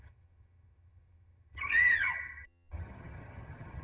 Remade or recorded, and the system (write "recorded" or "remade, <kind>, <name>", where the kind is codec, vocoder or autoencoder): remade, vocoder, HiFi-GAN